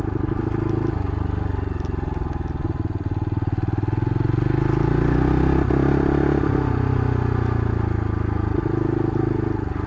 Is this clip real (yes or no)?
yes